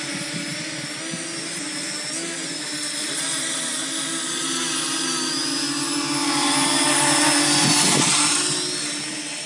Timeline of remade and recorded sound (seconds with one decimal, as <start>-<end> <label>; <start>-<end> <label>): 0.0-9.5 recorded